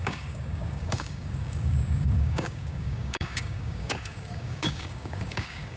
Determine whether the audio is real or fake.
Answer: fake